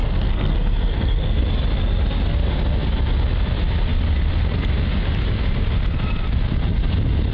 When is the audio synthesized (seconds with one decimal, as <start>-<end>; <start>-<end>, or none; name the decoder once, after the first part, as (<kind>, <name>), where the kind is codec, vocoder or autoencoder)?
0.0-1.4 (codec, SNAC)

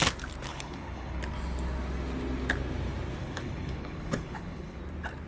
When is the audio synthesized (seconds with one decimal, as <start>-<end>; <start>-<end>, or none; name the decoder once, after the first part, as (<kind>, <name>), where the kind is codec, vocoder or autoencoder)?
0.5-1.2 (codec, HILCodec); 3.2-4.8

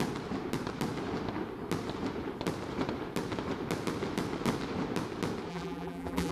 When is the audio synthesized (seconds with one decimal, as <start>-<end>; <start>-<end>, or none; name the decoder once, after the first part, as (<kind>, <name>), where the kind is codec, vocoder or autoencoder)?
5.5-6.3 (vocoder, BigVGAN v2)

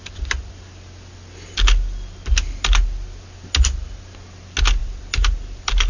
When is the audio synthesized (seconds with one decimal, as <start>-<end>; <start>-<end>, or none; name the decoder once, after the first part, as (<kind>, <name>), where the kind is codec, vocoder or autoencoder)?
4.8-5.9 (vocoder, BigVGAN v2)

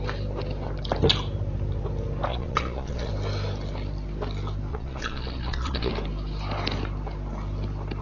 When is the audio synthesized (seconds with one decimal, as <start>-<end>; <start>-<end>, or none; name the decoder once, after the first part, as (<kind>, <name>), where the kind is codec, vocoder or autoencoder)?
2.3-3.1 (vocoder, Vocos); 4.7-5.9

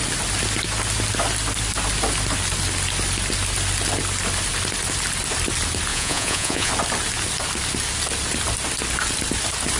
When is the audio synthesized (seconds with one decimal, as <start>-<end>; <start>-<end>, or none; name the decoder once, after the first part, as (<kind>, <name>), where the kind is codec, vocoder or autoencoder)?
5.9-6.7 (vocoder, Vocos)

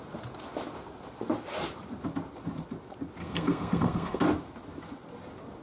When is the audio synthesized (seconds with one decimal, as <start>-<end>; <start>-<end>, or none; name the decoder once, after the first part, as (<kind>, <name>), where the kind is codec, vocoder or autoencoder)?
3.2-4.2 (codec, SNAC)

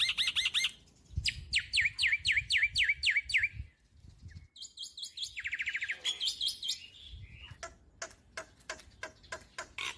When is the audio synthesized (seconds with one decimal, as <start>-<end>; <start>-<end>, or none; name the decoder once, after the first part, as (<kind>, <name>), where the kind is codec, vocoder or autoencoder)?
none